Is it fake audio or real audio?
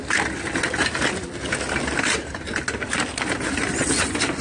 real